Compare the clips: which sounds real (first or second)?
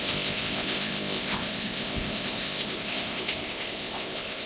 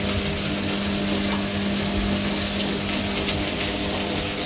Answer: second